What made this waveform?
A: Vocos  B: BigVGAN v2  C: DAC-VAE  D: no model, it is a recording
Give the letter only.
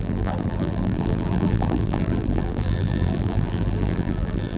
B